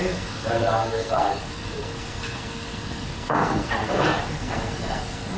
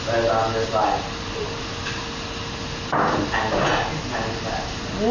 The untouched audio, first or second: second